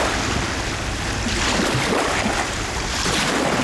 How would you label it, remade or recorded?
recorded